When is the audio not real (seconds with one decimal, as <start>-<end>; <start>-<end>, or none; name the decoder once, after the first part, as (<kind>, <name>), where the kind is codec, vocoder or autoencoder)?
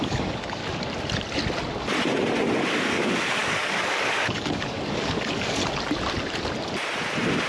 0.0-0.6 (codec, DAC); 2.7-5.6